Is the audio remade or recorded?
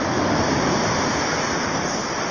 recorded